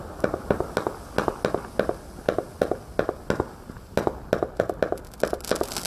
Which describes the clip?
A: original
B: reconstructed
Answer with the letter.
A